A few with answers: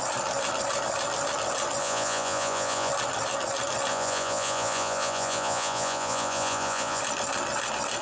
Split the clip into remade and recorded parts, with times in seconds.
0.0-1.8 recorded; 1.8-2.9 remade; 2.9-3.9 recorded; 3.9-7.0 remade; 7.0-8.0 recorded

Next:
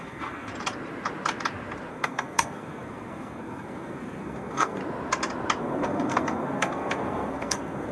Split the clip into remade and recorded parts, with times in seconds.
0.0-0.5 remade; 0.5-1.9 recorded; 1.9-4.8 remade; 4.8-5.6 recorded; 5.6-7.9 remade

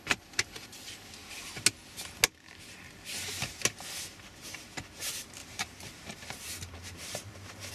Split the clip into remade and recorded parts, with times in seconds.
0.0-5.4 recorded; 5.4-7.7 remade

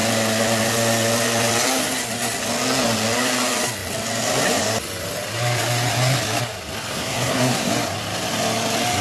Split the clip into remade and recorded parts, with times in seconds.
0.0-6.9 recorded; 6.9-7.7 remade; 7.7-9.0 recorded

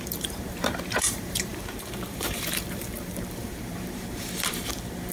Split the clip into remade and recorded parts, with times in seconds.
0.0-5.1 remade